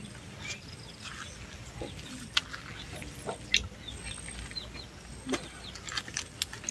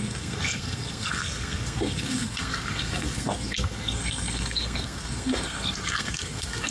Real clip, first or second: first